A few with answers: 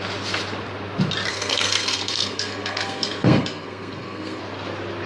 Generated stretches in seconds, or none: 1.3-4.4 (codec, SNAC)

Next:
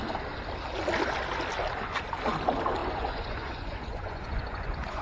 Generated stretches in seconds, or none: 2.8-5.0 (vocoder, Vocos)

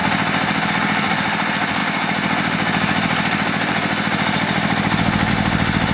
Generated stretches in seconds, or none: none

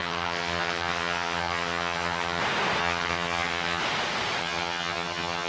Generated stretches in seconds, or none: 0.0-2.4 (vocoder, HiFi-GAN); 2.8-3.8; 4.4-5.5

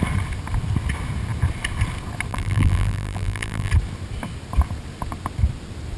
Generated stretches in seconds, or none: 2.3-3.7 (vocoder, BigVGAN v2)

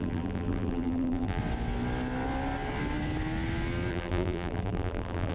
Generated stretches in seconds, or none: 0.0-1.4 (vocoder, BigVGAN v2); 3.9-5.3

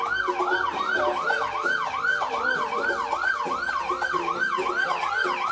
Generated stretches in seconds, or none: none